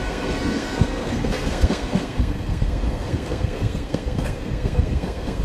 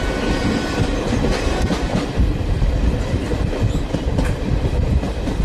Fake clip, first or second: first